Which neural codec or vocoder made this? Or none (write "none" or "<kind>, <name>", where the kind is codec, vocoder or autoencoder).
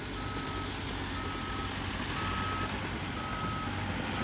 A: none